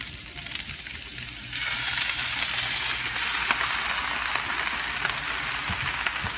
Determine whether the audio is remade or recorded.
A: recorded